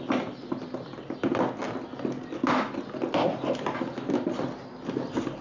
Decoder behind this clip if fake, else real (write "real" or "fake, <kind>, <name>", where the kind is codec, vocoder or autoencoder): real